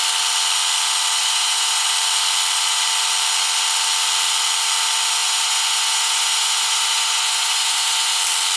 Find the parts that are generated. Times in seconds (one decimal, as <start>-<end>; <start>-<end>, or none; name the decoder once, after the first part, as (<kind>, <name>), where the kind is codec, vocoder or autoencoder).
1.2-1.9 (vocoder, Vocos); 5.2-8.2